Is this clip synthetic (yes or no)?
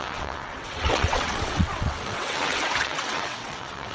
yes